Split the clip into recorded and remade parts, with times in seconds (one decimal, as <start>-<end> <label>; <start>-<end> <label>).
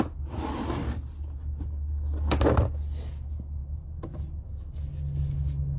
0.0-5.8 recorded